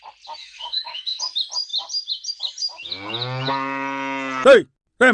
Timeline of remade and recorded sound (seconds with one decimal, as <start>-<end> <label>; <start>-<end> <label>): 0.0-0.4 recorded; 0.4-1.2 remade; 1.2-5.1 recorded

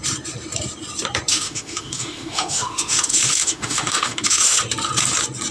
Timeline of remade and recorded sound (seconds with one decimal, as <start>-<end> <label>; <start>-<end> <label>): 0.0-1.3 recorded; 1.3-4.6 remade; 4.6-5.5 recorded

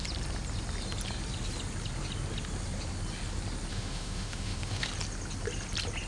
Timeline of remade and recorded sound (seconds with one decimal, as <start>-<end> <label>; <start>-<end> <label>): 0.0-3.7 recorded; 3.7-4.9 remade; 4.9-6.1 recorded

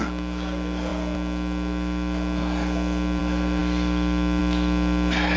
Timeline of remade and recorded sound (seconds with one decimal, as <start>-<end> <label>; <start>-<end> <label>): 0.0-5.4 recorded

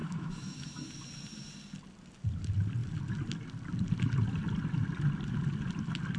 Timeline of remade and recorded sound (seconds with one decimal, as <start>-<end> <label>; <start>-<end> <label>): 0.0-0.9 remade; 0.9-6.2 recorded

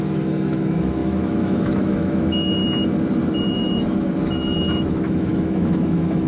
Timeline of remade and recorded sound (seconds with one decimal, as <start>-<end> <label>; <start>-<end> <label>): 0.0-2.6 remade; 2.6-3.5 recorded; 3.5-6.3 remade

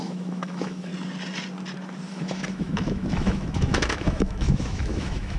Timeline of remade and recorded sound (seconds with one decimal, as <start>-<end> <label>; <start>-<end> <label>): 0.0-0.9 remade; 0.9-2.1 recorded; 2.1-5.4 remade

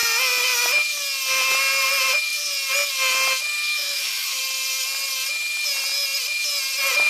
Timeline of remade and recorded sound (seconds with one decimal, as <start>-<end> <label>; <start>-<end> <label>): 0.0-3.7 recorded; 3.7-4.4 remade; 4.4-7.1 recorded